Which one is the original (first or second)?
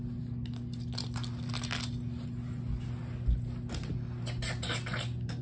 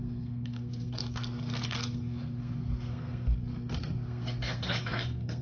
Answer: first